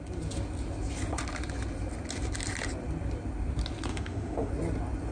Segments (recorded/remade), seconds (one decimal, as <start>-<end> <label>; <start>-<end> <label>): 0.0-3.9 recorded; 3.9-4.5 remade; 4.5-5.1 recorded